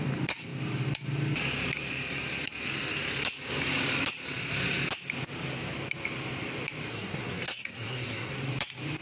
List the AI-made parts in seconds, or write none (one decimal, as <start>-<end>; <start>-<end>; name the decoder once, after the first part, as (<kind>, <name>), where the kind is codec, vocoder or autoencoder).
6.9-8.3 (codec, SNAC)